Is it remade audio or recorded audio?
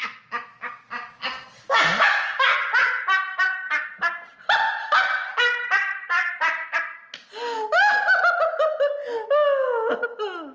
recorded